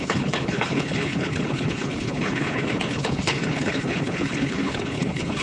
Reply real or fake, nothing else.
fake